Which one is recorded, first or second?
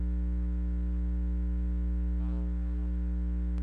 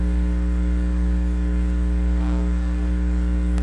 first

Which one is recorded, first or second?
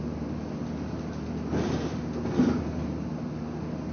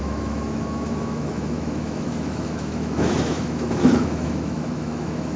first